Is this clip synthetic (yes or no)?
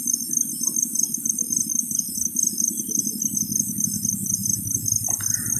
no